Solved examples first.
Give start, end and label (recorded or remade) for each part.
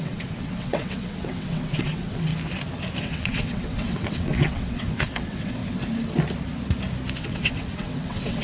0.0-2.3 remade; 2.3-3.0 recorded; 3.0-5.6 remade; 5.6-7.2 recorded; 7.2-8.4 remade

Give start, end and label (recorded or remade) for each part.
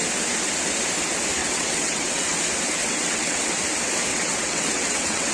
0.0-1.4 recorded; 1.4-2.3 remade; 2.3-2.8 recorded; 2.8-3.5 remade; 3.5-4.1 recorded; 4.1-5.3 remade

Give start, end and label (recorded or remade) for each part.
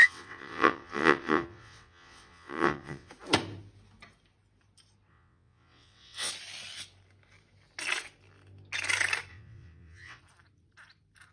0.0-3.1 remade; 3.1-5.1 recorded; 5.1-6.3 remade; 6.3-9.3 recorded; 9.3-10.2 remade; 10.2-11.3 recorded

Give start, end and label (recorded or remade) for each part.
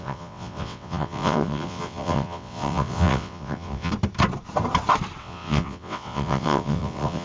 0.0-3.9 remade; 3.9-5.2 recorded; 5.2-7.2 remade